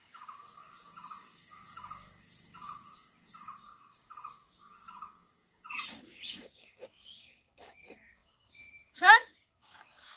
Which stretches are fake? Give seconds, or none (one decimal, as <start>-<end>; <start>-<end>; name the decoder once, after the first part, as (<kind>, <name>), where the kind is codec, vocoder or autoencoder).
0.0-10.2 (codec, DAC)